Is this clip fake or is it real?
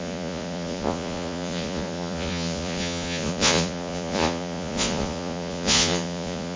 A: fake